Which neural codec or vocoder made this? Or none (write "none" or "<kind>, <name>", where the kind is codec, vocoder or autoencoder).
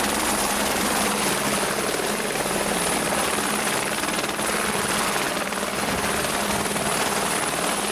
none